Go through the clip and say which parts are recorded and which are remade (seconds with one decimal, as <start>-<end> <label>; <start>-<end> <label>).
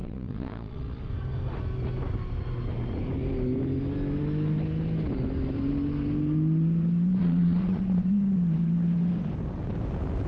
0.0-1.0 remade; 1.0-7.2 recorded; 7.2-8.1 remade; 8.1-10.3 recorded